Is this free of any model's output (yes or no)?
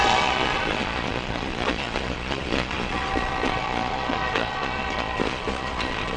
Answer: no